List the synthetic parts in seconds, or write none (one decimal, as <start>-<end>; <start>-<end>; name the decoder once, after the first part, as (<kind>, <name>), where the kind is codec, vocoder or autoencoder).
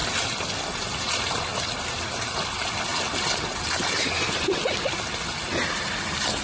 none